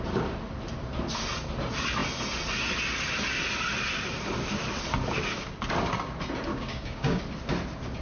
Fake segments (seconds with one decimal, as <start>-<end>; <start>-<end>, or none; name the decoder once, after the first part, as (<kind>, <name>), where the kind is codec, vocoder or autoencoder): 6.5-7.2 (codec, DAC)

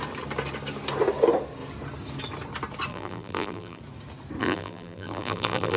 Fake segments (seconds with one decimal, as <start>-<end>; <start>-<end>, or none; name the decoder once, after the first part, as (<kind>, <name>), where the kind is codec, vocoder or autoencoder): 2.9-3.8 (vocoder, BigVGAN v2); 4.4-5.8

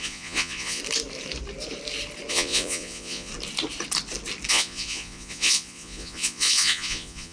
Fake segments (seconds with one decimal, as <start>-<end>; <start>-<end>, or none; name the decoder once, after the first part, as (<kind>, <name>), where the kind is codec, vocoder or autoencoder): 0.0-0.8 (vocoder, Vocos); 2.3-3.3; 4.5-7.3

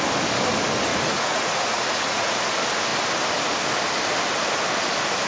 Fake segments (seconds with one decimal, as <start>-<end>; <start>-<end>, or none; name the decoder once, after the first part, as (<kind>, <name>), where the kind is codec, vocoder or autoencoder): 0.9-2.4 (vocoder, Vocos)